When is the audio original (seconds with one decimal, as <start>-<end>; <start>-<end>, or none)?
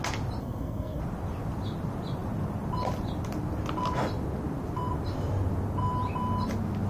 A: 0.0-0.4; 1.0-6.9